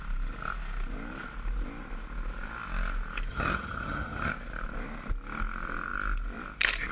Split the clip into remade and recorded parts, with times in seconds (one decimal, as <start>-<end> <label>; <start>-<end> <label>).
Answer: 0.0-3.3 recorded; 3.3-4.3 remade; 4.3-6.9 recorded